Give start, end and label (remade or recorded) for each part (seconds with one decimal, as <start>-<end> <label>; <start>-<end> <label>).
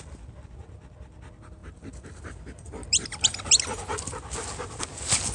0.0-5.3 recorded